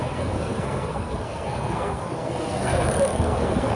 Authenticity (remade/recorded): remade